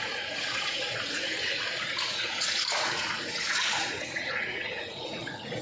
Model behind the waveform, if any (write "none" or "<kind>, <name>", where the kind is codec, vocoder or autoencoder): vocoder, Vocos